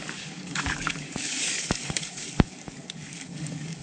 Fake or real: fake